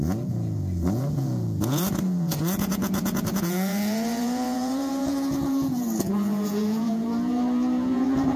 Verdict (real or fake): fake